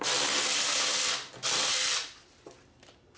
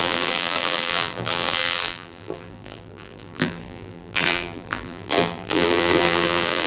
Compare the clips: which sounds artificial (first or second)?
second